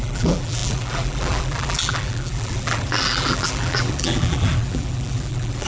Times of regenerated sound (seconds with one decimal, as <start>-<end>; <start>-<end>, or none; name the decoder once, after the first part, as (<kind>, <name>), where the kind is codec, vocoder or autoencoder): 0.0-5.7 (vocoder, BigVGAN v2)